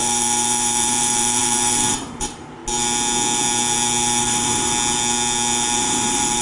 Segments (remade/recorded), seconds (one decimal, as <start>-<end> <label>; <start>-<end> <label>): 0.0-2.6 remade; 2.6-4.2 recorded; 4.2-4.7 remade; 4.7-5.8 recorded; 5.8-6.4 remade